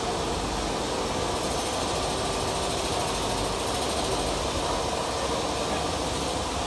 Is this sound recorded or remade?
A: recorded